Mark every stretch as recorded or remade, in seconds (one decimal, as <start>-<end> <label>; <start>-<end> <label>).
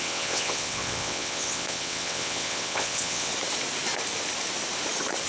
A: 0.0-3.3 remade; 3.3-5.3 recorded